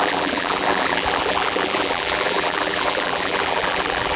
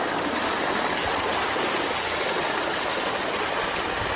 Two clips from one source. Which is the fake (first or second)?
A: first